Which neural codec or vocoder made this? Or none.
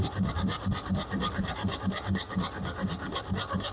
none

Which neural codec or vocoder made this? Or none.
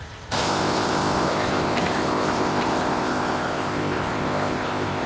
codec, ZipCodec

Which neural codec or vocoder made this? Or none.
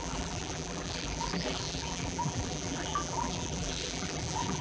vocoder, BigVGAN v2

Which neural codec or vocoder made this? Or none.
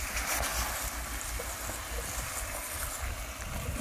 none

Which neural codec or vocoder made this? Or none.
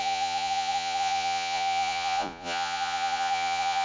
vocoder, Vocos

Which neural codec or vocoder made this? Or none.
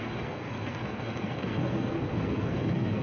codec, SNAC